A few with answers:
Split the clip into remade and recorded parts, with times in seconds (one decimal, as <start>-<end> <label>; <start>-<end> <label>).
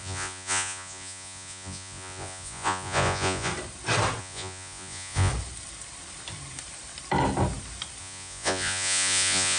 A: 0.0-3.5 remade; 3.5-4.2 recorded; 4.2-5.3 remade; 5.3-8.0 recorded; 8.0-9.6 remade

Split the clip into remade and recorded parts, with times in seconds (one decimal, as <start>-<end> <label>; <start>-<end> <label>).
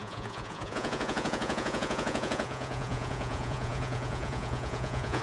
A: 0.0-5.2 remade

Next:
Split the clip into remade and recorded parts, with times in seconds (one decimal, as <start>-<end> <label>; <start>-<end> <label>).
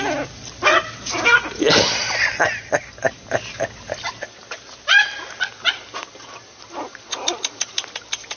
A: 0.0-8.4 recorded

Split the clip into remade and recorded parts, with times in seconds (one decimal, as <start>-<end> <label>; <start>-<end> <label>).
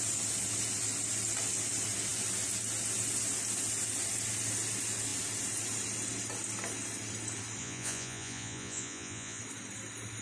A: 0.0-7.6 recorded; 7.6-9.4 remade; 9.4-10.2 recorded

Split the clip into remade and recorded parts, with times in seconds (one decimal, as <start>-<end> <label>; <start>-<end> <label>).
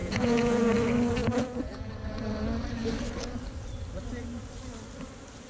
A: 0.0-0.7 remade; 0.7-1.2 recorded; 1.2-1.9 remade; 1.9-5.5 recorded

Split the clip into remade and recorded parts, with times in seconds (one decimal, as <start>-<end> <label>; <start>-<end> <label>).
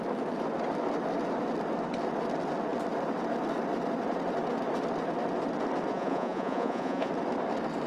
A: 0.0-5.9 recorded; 5.9-7.1 remade; 7.1-7.9 recorded